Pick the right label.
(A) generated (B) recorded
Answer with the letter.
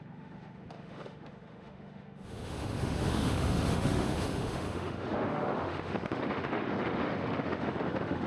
A